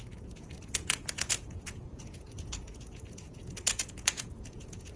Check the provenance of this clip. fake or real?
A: fake